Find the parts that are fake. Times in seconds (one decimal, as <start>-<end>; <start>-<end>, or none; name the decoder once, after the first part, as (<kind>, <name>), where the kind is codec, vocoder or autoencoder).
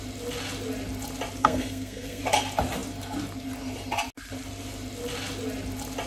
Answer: 1.4-2.2 (codec, SNAC)